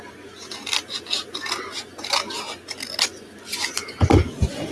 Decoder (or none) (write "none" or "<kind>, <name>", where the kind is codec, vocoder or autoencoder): none